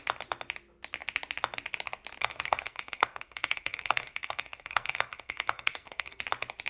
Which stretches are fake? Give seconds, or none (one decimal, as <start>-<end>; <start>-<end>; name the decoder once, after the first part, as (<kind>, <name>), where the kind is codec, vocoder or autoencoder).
2.2-6.2 (codec, SNAC)